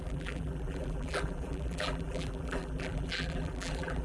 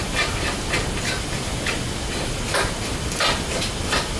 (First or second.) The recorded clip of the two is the second